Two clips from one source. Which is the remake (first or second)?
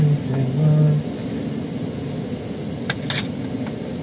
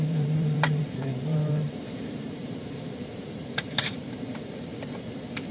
second